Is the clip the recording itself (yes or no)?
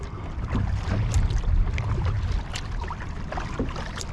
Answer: yes